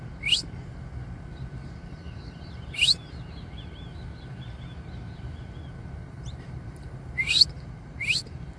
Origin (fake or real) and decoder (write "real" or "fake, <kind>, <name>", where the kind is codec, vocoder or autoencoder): fake, vocoder, BigVGAN v2